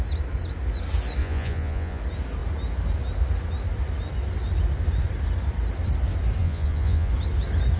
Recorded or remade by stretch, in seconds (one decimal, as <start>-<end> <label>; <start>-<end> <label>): 0.0-1.2 recorded; 1.2-2.0 remade; 2.0-6.4 recorded; 6.4-7.1 remade; 7.1-7.8 recorded